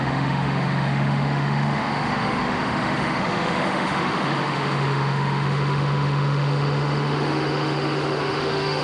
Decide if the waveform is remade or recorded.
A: remade